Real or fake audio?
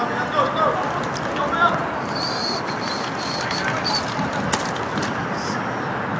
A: real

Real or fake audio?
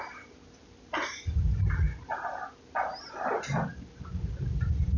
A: real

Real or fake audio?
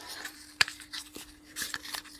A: fake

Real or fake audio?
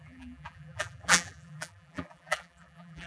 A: fake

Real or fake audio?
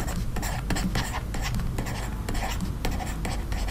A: real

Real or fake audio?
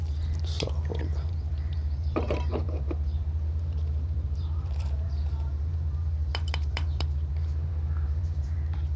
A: fake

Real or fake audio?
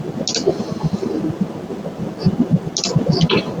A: real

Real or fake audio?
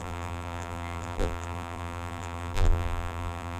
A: fake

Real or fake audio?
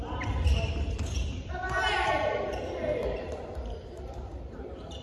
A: fake